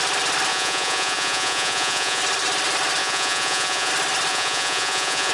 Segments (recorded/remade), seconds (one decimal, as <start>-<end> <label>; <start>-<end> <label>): 0.0-0.5 recorded; 0.5-2.2 remade; 2.2-3.0 recorded; 3.0-3.9 remade; 3.9-4.3 recorded; 4.3-5.3 remade